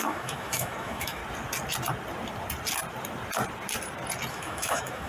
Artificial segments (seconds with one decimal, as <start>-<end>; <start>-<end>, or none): 0.0-1.2; 4.3-5.1